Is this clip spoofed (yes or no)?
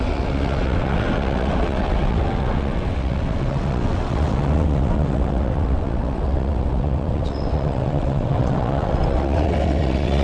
yes